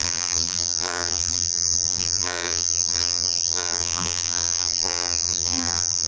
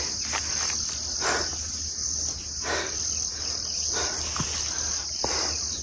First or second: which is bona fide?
second